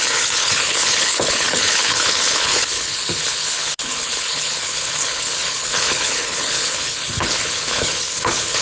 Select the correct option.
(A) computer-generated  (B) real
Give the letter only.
A